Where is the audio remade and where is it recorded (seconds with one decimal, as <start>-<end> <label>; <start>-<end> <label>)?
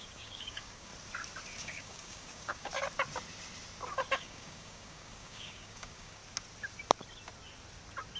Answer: 0.0-0.9 remade; 0.9-1.6 recorded; 1.6-2.7 remade; 2.7-4.2 recorded; 4.2-6.2 remade; 6.2-8.2 recorded